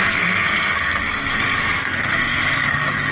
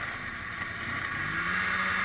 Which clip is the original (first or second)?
second